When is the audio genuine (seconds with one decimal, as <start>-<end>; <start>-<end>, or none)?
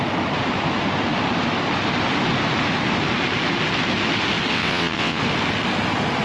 0.0-4.5; 5.2-6.2